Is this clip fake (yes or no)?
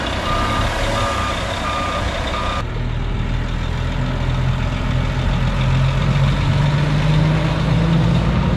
no